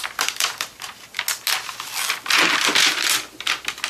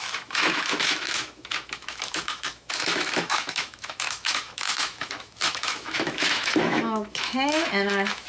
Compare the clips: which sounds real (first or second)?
first